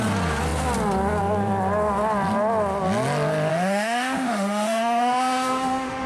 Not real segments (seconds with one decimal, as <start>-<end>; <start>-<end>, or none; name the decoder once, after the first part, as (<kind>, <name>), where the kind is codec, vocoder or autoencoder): 3.5-6.1 (autoencoder, DAC-VAE)